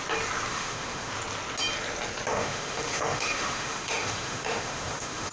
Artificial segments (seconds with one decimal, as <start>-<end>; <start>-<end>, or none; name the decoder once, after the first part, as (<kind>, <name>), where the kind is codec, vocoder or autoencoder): 0.5-1.1 (autoencoder, DAC-VAE); 2.3-5.3